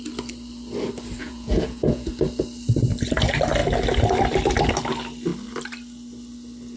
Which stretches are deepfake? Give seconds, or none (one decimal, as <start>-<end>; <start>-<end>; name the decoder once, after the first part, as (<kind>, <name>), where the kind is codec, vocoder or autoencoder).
1.2-2.1 (vocoder, Vocos)